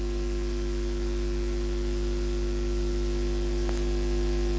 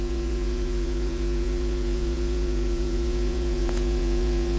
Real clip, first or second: first